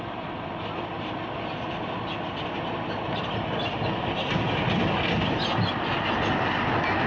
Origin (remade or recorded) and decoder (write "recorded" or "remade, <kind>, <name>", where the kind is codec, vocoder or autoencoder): recorded